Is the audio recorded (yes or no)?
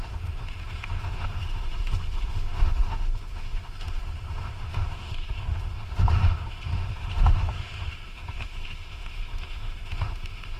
no